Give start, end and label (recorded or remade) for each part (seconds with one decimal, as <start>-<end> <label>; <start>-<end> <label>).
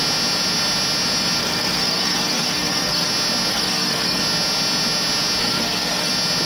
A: 0.0-1.4 recorded; 1.4-3.1 remade; 3.1-3.5 recorded; 3.5-4.2 remade; 4.2-5.4 recorded; 5.4-6.1 remade; 6.1-6.5 recorded